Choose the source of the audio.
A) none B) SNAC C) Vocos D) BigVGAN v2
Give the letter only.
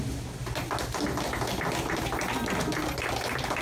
A